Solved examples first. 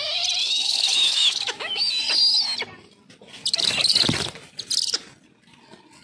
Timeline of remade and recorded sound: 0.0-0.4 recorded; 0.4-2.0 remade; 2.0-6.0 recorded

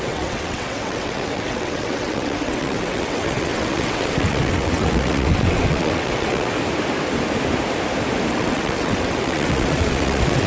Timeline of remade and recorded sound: 0.0-6.5 remade; 6.5-8.3 recorded; 8.3-10.5 remade

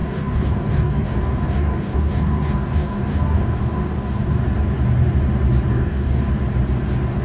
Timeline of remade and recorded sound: 0.0-4.3 remade; 4.3-5.7 recorded; 5.7-6.3 remade; 6.3-7.2 recorded